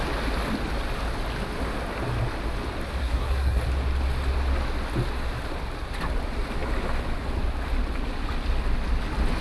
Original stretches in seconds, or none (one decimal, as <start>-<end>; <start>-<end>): 0.0-3.0; 3.6-9.4